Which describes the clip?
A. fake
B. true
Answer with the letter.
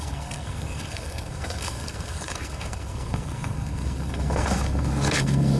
A